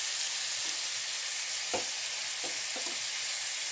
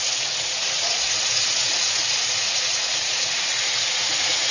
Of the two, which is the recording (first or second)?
first